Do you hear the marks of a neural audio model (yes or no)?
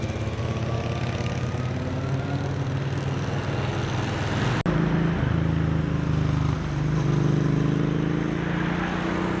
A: no